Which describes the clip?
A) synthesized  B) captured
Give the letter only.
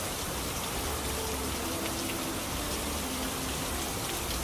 A